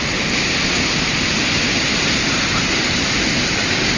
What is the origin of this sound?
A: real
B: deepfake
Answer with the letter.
A